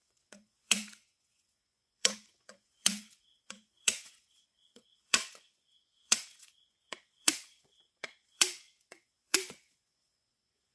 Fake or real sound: fake